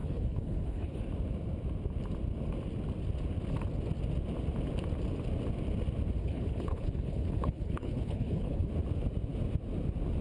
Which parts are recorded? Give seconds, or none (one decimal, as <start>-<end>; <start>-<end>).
1.0-6.2; 8.7-10.2